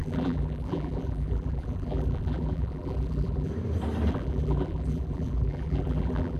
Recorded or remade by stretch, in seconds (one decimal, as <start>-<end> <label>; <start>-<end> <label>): 0.0-3.5 remade; 3.5-4.1 recorded; 4.1-6.4 remade